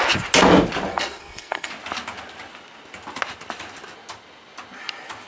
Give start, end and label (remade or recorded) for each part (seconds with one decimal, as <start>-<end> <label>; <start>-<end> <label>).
0.0-0.9 recorded; 0.9-1.7 remade; 1.7-5.3 recorded